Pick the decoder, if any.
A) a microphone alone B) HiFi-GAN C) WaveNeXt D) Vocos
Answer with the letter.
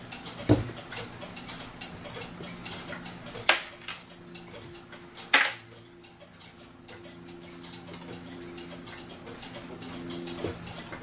A